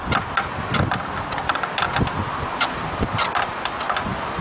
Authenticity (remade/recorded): recorded